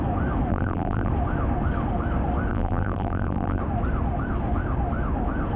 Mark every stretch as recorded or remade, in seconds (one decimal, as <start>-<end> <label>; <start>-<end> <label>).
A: 0.0-0.5 recorded; 0.5-1.1 remade; 1.1-2.5 recorded; 2.5-3.6 remade; 3.6-5.6 recorded